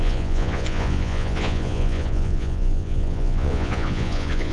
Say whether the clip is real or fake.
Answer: fake